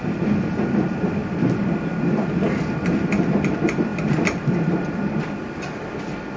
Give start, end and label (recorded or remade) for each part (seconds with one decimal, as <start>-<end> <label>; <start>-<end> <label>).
0.0-6.4 recorded